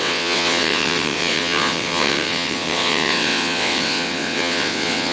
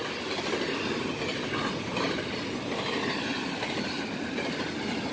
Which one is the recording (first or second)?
second